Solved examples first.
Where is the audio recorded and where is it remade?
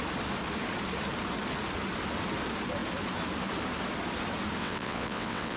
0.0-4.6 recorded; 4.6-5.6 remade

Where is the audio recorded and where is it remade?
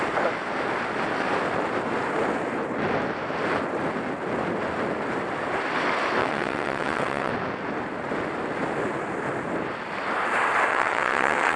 0.0-6.2 recorded; 6.2-7.3 remade; 7.3-10.7 recorded; 10.7-11.6 remade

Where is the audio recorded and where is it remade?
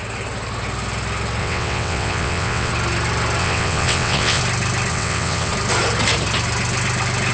0.0-1.4 recorded; 1.4-2.7 remade; 2.7-3.4 recorded; 3.4-4.4 remade; 4.4-4.9 recorded; 4.9-5.5 remade; 5.5-7.3 recorded